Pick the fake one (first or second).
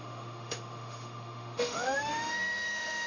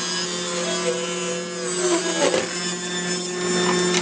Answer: first